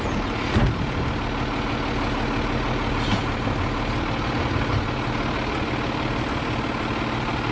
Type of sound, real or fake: real